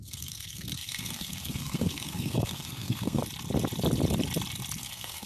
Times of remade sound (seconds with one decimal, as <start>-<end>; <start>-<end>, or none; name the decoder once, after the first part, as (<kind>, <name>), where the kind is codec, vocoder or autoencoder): 0.0-3.2 (codec, SNAC); 4.8-5.3